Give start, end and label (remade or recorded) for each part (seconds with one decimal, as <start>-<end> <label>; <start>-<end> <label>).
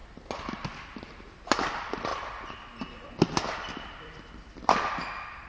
0.0-5.5 recorded